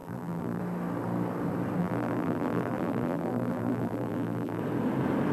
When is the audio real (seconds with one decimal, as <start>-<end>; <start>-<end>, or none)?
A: 0.6-1.8; 4.6-5.3